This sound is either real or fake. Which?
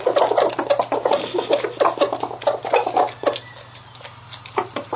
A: real